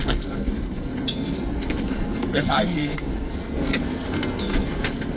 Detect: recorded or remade remade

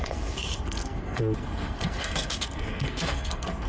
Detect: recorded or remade remade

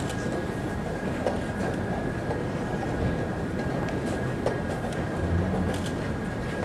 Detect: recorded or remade recorded